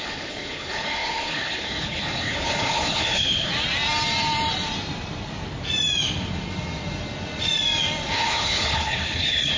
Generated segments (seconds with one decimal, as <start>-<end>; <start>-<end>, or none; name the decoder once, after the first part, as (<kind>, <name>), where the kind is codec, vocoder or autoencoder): 0.0-3.5 (codec, HILCodec); 8.1-9.6